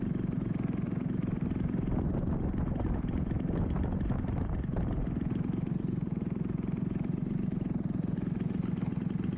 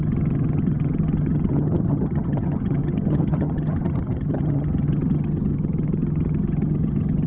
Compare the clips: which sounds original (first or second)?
first